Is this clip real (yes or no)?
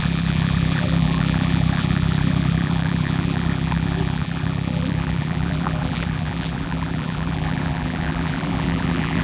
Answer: no